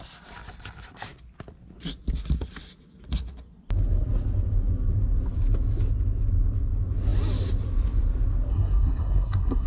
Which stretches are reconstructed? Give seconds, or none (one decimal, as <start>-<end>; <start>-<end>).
8.5-9.7